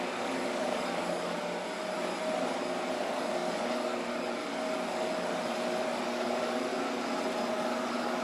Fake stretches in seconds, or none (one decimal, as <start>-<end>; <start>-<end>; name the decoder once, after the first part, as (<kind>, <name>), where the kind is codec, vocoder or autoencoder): 0.0-1.4 (codec, DAC); 2.9-6.7; 7.5-8.2